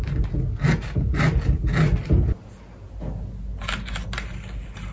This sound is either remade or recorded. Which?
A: recorded